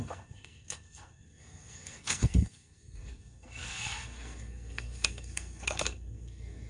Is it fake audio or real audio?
fake